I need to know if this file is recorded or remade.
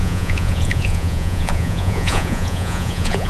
remade